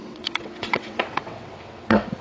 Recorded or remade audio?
remade